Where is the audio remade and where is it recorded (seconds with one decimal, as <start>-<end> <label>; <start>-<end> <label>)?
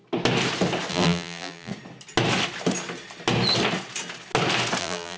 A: 0.0-0.9 recorded; 0.9-1.7 remade; 1.7-4.8 recorded; 4.8-5.2 remade